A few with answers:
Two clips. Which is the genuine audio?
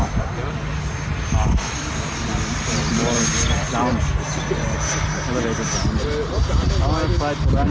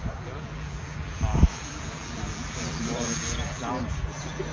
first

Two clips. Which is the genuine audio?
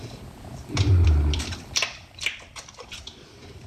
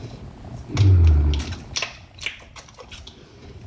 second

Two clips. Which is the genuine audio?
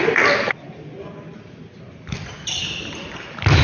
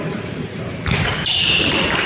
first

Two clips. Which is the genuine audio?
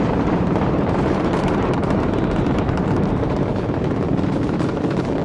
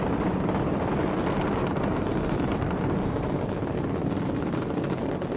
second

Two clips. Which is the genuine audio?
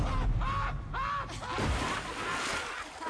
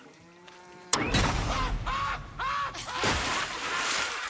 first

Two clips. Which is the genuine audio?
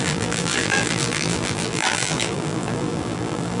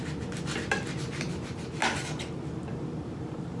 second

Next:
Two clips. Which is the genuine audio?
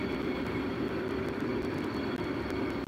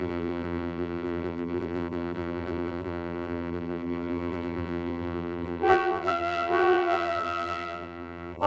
first